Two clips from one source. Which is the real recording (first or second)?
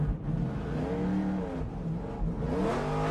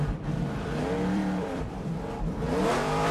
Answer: first